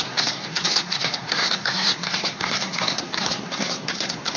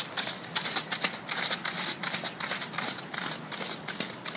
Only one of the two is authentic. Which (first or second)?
second